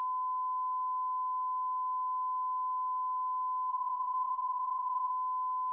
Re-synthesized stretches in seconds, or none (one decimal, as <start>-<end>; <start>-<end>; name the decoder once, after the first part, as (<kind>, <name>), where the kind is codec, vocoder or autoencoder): 3.7-5.1 (vocoder, Vocos)